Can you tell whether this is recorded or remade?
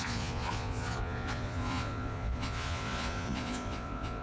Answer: remade